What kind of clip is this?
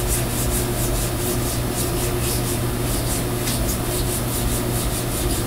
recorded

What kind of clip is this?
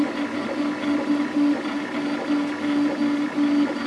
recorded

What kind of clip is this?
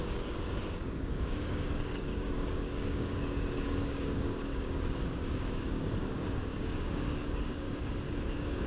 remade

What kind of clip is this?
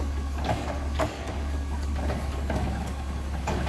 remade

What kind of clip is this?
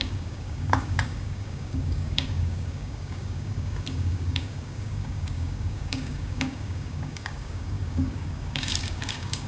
remade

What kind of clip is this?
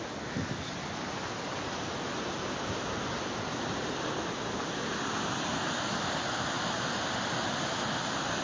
recorded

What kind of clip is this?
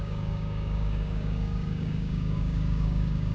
remade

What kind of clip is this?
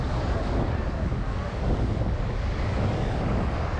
remade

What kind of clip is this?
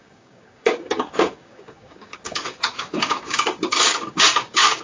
remade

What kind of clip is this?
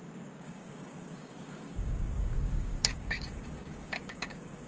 remade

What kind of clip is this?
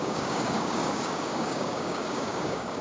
remade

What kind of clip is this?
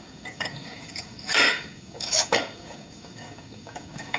remade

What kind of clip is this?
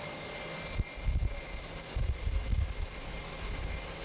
recorded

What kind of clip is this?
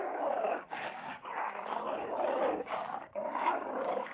remade